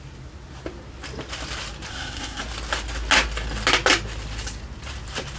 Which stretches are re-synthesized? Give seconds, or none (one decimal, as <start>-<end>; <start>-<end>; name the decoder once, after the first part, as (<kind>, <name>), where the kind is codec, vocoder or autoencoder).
1.9-2.4 (codec, SNAC)